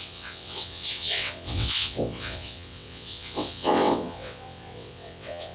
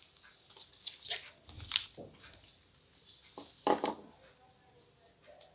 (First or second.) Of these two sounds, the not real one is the first